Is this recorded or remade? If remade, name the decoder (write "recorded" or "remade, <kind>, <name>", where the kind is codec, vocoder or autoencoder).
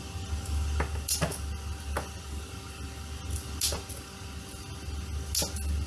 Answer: recorded